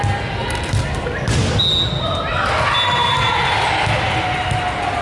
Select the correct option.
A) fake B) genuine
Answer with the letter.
B